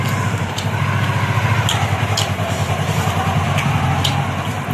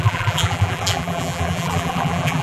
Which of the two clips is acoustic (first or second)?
first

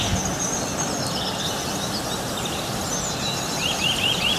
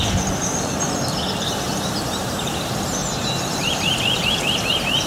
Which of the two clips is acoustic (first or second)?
first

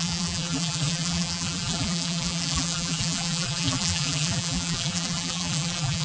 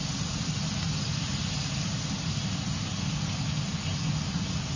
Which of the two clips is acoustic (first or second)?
second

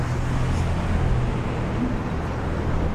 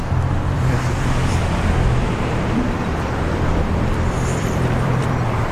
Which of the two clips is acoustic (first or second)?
first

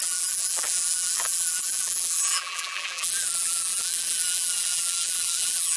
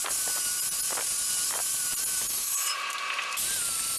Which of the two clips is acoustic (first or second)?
second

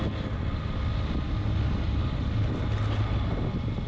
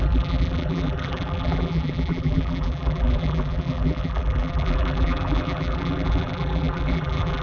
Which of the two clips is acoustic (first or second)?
first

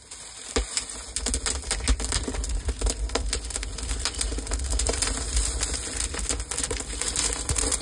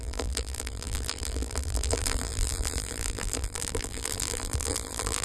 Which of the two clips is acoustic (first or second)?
first